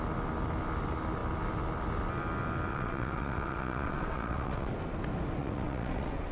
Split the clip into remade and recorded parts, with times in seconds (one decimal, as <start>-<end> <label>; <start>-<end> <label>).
0.0-2.7 recorded; 2.7-4.7 remade; 4.7-5.4 recorded; 5.4-6.3 remade